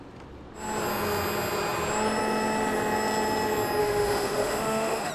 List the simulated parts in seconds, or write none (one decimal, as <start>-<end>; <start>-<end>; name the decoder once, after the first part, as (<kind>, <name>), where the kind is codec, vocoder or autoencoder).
3.8-5.1 (autoencoder, DAC-VAE)

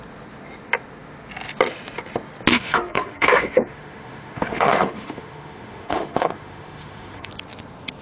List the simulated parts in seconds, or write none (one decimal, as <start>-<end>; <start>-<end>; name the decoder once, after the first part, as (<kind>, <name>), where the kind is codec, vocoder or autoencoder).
2.5-7.3 (autoencoder, DAC-VAE)

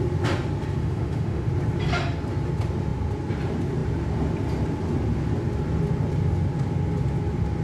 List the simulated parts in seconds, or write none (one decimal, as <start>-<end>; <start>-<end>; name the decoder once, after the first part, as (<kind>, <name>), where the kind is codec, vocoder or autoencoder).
0.8-1.5 (autoencoder, DAC-VAE)

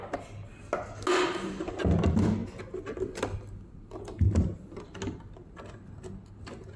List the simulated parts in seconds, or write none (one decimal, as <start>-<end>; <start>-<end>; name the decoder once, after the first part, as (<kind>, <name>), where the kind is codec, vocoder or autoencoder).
none